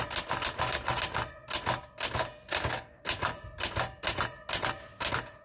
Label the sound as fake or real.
real